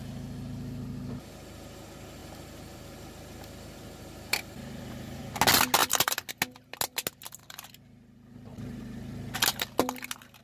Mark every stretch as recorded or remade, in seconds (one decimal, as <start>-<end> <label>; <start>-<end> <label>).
0.0-2.2 recorded; 2.2-5.2 remade; 5.2-5.8 recorded; 5.8-6.3 remade; 6.3-10.4 recorded